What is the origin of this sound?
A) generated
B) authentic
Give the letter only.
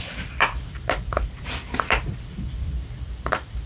A